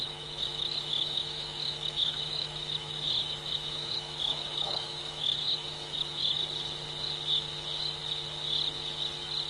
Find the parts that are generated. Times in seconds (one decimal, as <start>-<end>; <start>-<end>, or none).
0.0-6.4